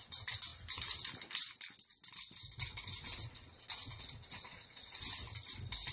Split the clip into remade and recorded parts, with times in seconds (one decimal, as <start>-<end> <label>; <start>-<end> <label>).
0.0-5.9 recorded